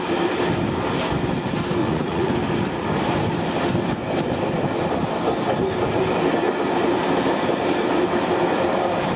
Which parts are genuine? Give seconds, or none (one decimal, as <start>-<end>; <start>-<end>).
0.0-1.8; 2.3-9.2